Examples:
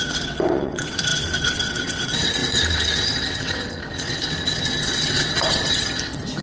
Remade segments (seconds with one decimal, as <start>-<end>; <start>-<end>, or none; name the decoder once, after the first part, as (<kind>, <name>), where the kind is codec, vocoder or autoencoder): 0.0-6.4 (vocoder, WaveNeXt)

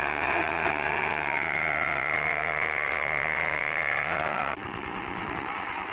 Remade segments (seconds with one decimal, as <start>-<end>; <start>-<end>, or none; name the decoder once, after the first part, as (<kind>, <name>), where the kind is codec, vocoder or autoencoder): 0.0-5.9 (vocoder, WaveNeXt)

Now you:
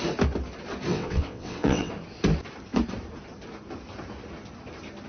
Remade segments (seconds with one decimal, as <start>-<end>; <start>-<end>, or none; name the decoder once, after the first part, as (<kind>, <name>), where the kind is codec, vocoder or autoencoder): 0.9-1.9 (vocoder, WaveNeXt)

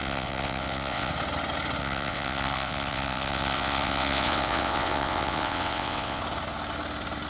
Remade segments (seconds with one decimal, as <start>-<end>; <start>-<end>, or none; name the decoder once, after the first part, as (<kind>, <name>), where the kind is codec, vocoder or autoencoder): 0.0-1.1 (vocoder, WaveNeXt); 1.8-6.2

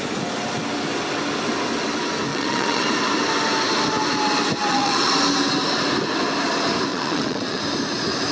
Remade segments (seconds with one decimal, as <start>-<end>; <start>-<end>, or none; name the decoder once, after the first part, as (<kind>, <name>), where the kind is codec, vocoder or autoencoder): 2.3-2.9 (vocoder, WaveNeXt); 4.6-5.1; 6.9-7.6